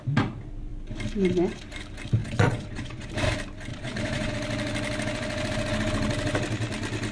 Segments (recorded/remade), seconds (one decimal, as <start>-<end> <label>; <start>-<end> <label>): 0.0-2.2 recorded; 2.2-3.1 remade; 3.1-3.7 recorded; 3.7-4.3 remade; 4.3-7.1 recorded